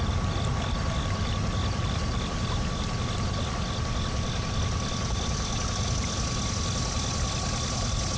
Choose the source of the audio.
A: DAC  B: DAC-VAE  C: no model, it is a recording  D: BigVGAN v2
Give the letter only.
C